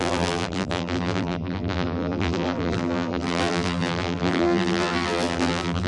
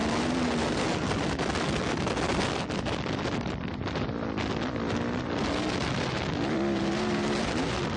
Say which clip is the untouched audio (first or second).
second